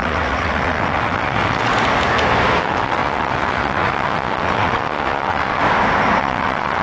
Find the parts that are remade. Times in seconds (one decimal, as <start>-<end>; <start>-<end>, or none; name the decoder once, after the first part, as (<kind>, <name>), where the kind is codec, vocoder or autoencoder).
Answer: 0.0-1.7 (vocoder, WaveNeXt); 2.6-5.6; 6.2-6.8